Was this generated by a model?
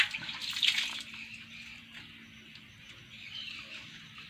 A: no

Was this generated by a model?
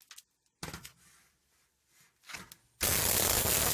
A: no